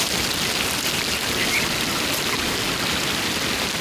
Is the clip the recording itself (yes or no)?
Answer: yes